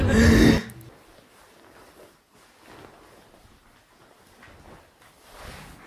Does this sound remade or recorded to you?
recorded